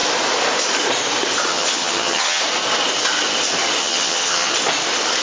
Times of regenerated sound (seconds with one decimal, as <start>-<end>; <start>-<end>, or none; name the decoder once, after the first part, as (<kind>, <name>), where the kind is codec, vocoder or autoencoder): 1.5-2.4 (vocoder, HiFi-GAN); 3.8-4.5